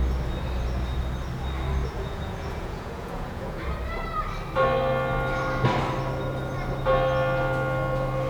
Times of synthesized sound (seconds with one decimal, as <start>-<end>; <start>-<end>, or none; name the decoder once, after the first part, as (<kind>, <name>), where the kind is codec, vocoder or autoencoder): 1.8-3.7 (vocoder, Vocos)